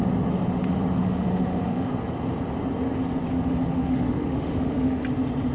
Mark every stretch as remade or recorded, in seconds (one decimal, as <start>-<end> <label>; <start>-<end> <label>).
0.0-1.0 recorded; 1.0-1.9 remade; 1.9-3.7 recorded; 3.7-5.0 remade; 5.0-5.5 recorded